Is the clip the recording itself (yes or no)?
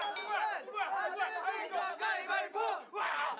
yes